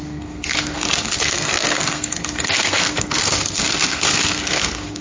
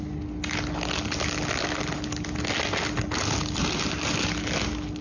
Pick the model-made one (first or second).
first